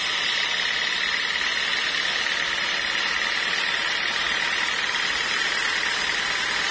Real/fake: real